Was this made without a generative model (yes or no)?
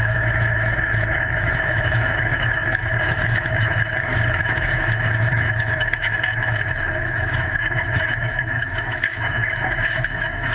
no